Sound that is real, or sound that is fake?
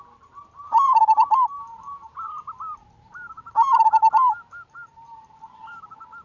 real